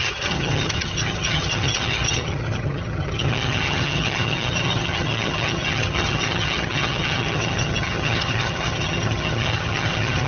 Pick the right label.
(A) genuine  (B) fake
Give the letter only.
B